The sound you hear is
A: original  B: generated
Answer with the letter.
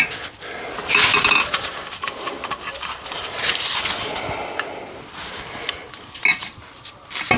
A